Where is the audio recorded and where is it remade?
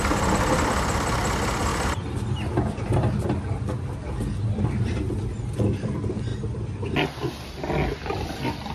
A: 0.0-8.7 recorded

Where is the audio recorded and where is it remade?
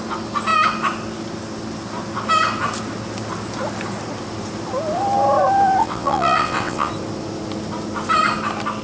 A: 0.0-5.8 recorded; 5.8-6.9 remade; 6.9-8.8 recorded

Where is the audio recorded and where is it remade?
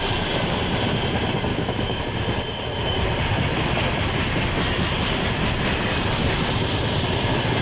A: 0.0-1.5 recorded; 1.5-2.0 remade; 2.0-7.6 recorded